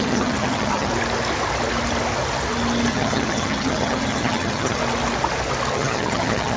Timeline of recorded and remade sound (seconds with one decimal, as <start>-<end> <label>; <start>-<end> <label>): 0.0-0.9 remade; 0.9-2.9 recorded; 2.9-4.8 remade; 4.8-5.7 recorded; 5.7-6.6 remade